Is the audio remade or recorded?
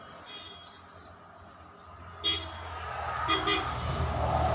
recorded